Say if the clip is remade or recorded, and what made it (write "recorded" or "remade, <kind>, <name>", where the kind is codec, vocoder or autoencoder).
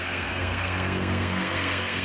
remade, codec, SNAC